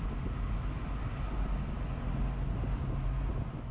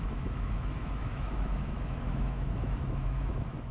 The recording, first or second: first